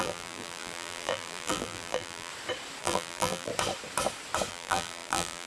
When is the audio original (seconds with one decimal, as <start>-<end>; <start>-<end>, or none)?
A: 2.3-2.8; 3.5-4.5

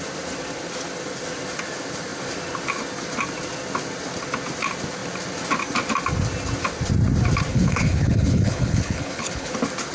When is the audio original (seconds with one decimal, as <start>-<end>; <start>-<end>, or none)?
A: 0.0-7.5; 9.5-9.9

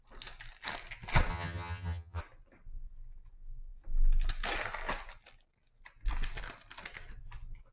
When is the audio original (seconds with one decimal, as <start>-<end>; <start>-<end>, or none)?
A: 0.0-1.3; 2.2-7.7

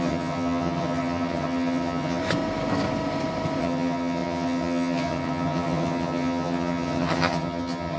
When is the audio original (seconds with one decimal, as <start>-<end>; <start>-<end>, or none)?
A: 2.2-3.6

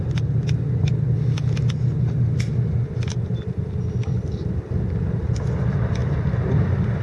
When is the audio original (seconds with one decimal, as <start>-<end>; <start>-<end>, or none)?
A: 0.0-7.0

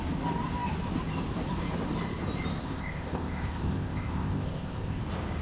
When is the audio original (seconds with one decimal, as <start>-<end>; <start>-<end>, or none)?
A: 0.0-2.6; 5.0-5.4